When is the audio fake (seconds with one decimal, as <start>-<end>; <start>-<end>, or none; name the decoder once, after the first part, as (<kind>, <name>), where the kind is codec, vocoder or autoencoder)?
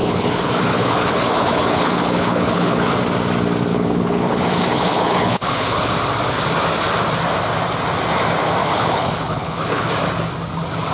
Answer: 0.0-3.0 (codec, HILCodec); 3.7-5.9; 8.6-9.9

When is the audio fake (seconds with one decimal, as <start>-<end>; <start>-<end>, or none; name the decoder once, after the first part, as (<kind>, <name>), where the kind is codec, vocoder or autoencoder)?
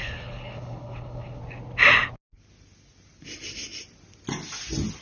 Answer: 0.0-1.4 (codec, HILCodec)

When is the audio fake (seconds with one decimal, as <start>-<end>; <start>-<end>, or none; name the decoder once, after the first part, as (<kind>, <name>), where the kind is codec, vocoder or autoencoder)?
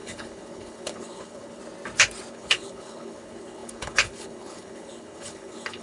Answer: 0.0-1.6 (codec, HILCodec); 2.3-5.8